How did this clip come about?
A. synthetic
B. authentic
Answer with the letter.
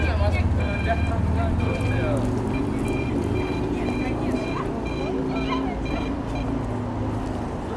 B